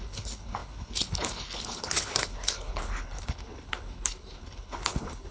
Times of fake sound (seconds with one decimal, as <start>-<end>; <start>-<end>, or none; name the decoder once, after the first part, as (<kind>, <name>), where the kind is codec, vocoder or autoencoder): 0.0-5.3 (codec, HILCodec)